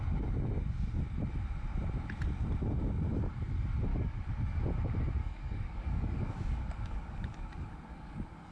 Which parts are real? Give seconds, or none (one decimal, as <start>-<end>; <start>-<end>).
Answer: 0.0-3.9; 4.6-5.2